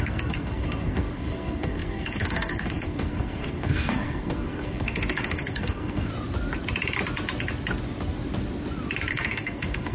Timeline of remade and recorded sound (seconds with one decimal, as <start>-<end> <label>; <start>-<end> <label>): 0.0-6.1 remade; 6.1-9.1 recorded; 9.1-9.9 remade